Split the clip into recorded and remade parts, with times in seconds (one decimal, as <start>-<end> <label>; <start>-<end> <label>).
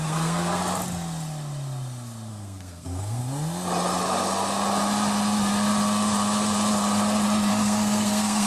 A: 0.0-0.6 remade; 0.6-2.3 recorded; 2.3-3.2 remade; 3.2-7.5 recorded; 7.5-8.5 remade